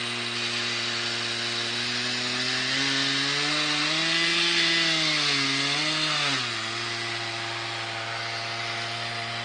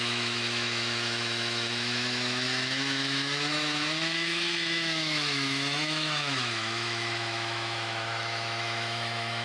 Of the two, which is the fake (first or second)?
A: second